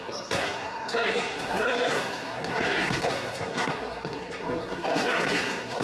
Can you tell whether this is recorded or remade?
remade